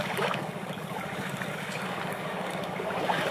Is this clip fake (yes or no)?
yes